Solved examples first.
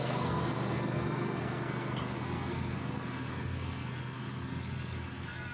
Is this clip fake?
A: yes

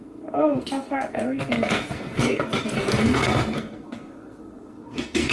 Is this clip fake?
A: yes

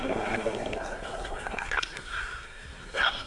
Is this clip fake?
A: yes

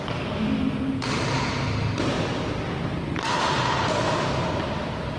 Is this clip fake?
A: no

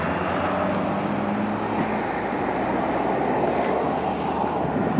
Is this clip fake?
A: no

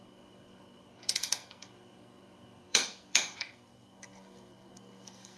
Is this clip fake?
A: yes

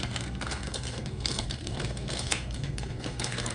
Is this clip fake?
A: yes